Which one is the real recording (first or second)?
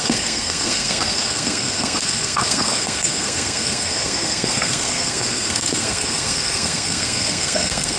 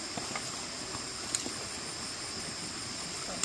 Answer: second